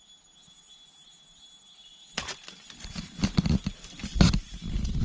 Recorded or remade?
recorded